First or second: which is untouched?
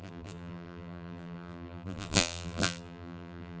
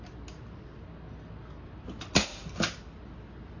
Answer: second